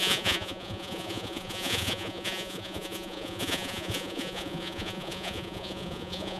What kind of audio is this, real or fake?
fake